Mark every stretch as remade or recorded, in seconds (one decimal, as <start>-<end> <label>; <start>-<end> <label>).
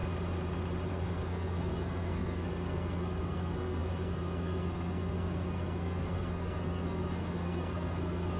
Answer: 0.0-0.9 recorded; 0.9-8.4 remade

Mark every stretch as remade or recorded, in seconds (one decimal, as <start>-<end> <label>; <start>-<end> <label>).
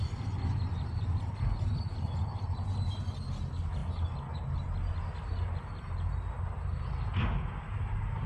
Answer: 0.0-8.3 recorded